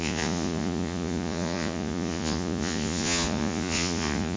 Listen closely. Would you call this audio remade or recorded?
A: remade